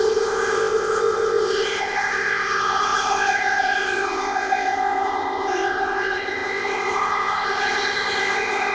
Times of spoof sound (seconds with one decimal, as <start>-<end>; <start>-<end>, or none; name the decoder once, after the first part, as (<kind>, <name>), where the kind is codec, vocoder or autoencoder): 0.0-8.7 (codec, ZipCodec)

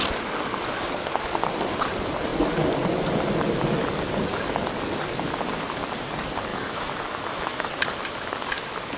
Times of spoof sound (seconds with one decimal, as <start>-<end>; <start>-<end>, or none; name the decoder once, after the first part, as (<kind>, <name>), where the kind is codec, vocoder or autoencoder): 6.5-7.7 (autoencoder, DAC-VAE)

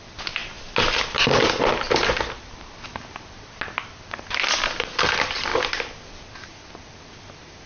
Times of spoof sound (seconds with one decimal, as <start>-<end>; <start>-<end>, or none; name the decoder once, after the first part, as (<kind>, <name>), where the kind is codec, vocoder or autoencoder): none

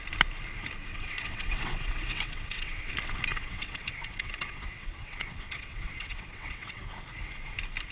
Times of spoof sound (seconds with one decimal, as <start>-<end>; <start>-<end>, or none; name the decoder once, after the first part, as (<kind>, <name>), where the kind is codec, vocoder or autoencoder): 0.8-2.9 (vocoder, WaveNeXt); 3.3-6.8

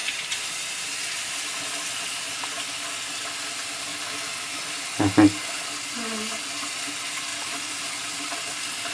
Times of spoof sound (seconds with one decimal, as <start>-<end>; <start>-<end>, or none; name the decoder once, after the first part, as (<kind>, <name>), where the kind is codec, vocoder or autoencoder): 0.0-1.4 (vocoder, BigVGAN v2); 3.9-4.8; 7.3-8.1

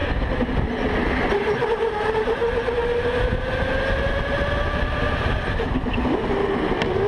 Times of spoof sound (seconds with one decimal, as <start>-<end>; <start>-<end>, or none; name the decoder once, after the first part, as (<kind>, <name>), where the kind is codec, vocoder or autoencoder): none

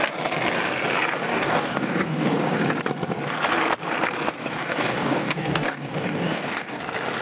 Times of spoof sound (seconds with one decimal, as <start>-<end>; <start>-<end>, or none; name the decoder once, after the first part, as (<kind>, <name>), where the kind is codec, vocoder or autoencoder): 1.3-2.6 (codec, DAC); 4.4-6.8

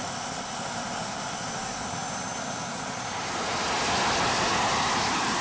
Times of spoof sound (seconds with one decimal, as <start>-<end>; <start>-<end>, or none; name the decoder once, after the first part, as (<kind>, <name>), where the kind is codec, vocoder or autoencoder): none